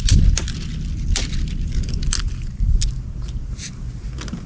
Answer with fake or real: real